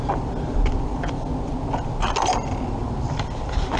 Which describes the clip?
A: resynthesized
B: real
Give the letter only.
B